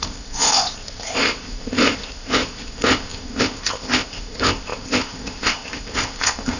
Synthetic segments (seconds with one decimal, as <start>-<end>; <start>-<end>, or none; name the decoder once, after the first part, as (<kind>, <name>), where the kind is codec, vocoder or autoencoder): 0.0-6.6 (codec, ZipCodec)